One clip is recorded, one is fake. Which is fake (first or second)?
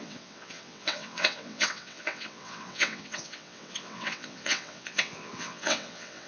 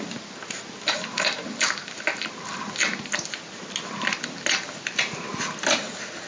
first